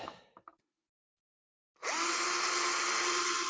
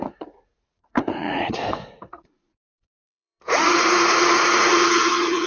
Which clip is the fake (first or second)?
second